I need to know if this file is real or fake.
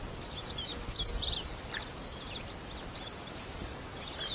real